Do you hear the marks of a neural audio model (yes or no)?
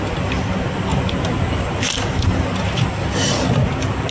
yes